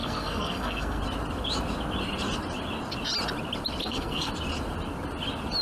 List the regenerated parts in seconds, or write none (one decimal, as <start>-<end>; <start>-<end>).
0.0-1.0; 3.8-4.3